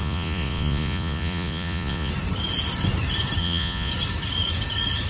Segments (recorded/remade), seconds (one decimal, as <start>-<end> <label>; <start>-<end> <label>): 0.0-2.1 remade; 2.1-3.4 recorded; 3.4-3.9 remade; 3.9-5.1 recorded